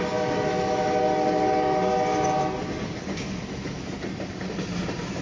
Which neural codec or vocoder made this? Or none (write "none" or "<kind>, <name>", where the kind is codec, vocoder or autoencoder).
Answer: none